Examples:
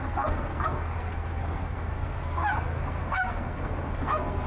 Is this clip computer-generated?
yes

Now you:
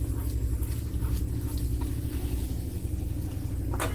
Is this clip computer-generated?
no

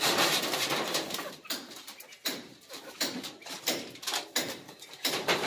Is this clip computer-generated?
yes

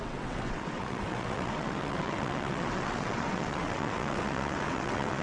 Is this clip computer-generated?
yes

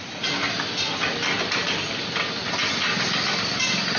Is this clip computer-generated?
no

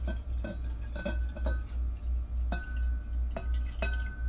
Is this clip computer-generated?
no